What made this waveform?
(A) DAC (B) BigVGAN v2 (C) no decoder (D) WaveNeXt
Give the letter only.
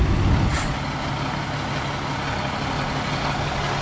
C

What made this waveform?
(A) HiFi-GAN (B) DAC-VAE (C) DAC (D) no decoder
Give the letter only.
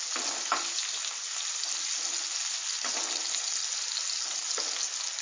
D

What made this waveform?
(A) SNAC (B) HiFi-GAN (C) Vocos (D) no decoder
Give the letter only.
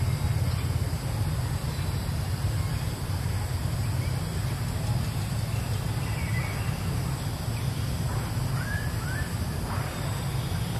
D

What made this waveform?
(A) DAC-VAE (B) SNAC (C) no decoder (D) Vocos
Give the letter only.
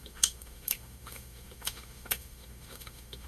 A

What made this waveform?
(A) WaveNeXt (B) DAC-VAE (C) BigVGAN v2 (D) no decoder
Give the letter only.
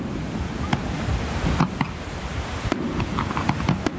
D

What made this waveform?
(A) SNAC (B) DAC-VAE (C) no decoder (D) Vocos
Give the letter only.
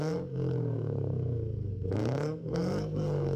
A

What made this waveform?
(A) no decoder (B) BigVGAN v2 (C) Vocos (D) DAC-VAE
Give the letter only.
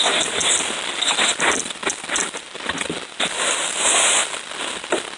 B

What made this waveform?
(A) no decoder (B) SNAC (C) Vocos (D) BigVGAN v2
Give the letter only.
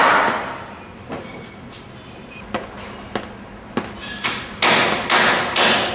A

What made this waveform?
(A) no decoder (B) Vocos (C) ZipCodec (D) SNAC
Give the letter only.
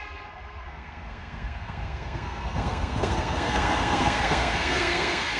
D